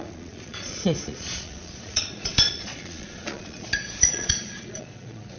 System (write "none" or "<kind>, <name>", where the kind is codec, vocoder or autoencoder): vocoder, Vocos